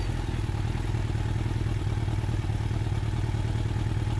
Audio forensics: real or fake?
real